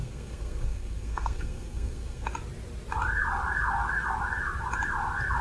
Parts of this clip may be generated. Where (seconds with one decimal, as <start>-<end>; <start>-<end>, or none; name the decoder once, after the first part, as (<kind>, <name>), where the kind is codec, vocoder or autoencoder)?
0.0-2.3 (codec, SNAC)